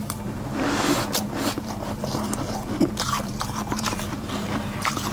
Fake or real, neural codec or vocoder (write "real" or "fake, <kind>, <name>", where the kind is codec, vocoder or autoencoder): fake, vocoder, BigVGAN v2